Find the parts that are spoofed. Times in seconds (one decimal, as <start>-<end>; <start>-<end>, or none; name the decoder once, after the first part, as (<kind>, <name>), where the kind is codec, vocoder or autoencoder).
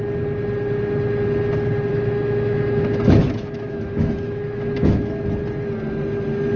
1.9-5.1 (autoencoder, DAC-VAE)